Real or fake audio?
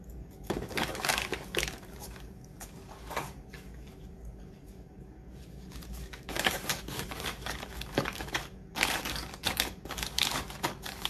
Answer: fake